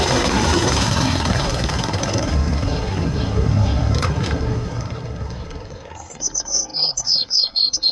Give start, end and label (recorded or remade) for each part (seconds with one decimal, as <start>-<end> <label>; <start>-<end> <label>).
0.0-7.9 remade

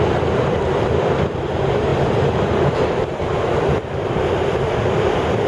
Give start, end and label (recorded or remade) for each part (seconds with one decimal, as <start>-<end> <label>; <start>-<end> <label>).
0.0-5.5 remade

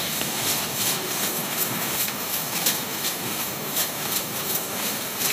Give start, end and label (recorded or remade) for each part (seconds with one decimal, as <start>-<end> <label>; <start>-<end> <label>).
0.0-5.3 remade

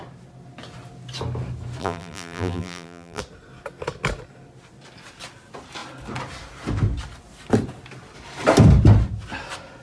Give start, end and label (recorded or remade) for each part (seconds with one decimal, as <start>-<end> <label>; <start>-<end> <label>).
0.0-1.8 recorded; 1.8-3.2 remade; 3.2-9.8 recorded

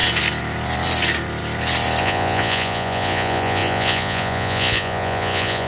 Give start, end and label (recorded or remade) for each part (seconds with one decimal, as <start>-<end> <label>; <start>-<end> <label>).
0.0-2.0 recorded; 2.0-5.7 remade

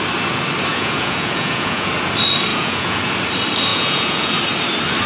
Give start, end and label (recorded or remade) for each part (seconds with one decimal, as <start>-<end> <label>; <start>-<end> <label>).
0.0-0.7 recorded; 0.7-1.9 remade; 1.9-2.5 recorded; 2.5-3.1 remade; 3.1-3.7 recorded; 3.7-4.4 remade; 4.4-5.1 recorded

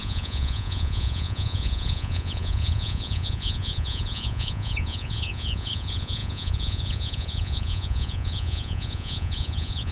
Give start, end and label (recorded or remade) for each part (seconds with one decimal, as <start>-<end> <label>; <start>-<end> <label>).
0.0-9.9 remade